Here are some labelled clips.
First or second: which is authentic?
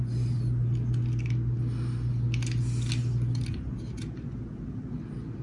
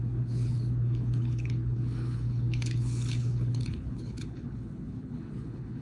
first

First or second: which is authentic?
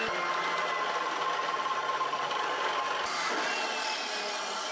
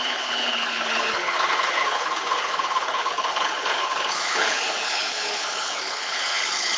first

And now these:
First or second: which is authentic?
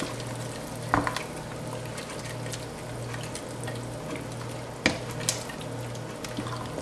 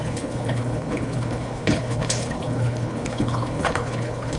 first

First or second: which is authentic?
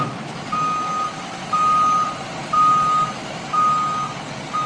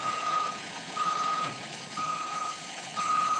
first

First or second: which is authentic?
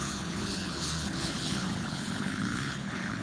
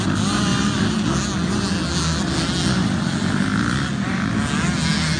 second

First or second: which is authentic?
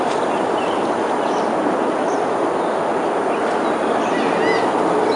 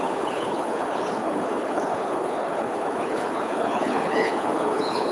first